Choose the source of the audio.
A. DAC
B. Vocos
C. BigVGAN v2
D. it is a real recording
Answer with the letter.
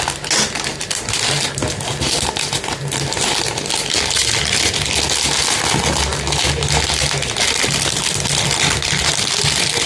D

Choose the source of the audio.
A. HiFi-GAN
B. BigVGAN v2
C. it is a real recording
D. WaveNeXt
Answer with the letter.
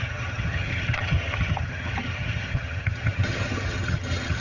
A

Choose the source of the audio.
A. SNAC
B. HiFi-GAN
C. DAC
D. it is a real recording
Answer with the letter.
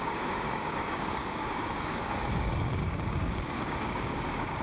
C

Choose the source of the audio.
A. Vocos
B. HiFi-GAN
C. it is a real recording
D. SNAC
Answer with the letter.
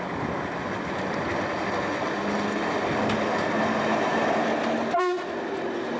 C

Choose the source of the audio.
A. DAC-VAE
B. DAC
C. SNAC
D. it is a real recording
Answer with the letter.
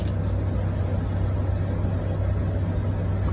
D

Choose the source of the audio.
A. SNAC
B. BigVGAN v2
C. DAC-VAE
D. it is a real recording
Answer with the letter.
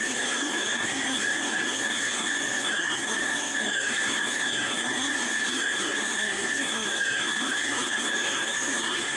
A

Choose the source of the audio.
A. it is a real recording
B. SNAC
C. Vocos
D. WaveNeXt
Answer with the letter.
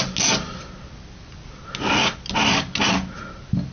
A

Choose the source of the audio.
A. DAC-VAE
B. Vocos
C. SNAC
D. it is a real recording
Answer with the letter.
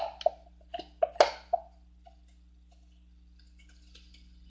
D